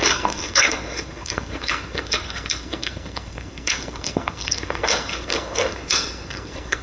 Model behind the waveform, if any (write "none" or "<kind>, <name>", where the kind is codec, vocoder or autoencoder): codec, SNAC